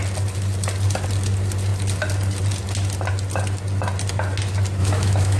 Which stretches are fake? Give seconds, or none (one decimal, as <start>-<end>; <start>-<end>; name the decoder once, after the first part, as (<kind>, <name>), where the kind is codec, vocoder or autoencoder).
4.8-5.4 (autoencoder, DAC-VAE)